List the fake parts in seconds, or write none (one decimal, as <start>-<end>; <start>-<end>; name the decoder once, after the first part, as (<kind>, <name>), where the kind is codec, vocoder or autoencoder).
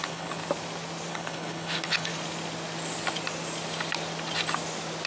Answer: 0.0-0.4 (codec, HILCodec); 1.1-2.1